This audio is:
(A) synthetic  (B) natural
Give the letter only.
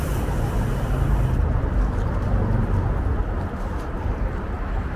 B